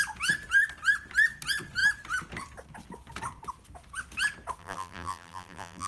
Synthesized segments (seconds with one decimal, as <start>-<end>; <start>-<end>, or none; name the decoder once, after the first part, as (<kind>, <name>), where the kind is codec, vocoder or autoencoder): 4.6-5.9 (vocoder, BigVGAN v2)